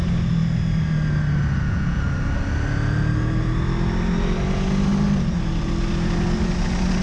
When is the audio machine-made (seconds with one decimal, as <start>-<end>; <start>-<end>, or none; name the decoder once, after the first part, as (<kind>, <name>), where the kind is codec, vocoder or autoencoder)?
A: none